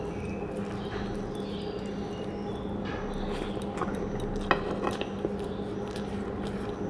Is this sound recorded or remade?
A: recorded